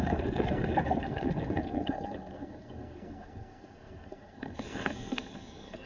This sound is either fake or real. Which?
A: fake